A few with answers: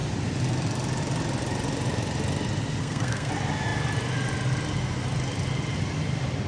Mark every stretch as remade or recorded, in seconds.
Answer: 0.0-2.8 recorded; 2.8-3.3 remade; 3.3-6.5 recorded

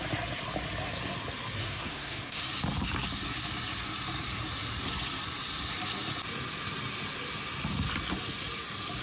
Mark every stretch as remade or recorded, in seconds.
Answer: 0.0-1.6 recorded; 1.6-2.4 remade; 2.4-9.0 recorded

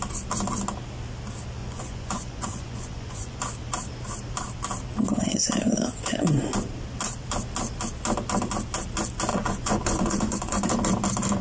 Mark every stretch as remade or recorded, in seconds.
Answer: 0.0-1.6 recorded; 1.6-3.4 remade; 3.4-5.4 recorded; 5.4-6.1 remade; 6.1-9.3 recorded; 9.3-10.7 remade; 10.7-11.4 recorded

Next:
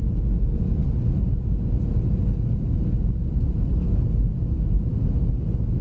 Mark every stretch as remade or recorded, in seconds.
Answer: 0.0-5.8 recorded

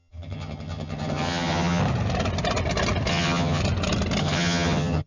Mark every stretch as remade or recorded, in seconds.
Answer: 0.0-1.8 remade; 1.8-3.1 recorded; 3.1-3.6 remade; 3.6-4.2 recorded; 4.2-5.1 remade

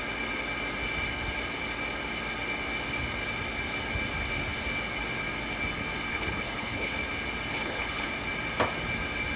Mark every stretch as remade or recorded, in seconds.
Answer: 0.0-6.1 recorded; 6.1-7.0 remade; 7.0-7.5 recorded; 7.5-8.1 remade; 8.1-9.4 recorded